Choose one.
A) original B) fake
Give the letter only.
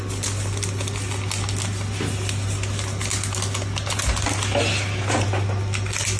A